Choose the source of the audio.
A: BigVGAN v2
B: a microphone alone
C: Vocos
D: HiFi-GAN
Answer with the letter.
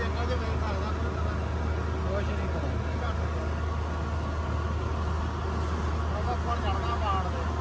B